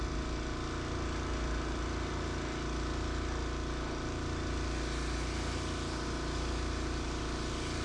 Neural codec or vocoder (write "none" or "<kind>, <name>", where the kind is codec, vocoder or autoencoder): none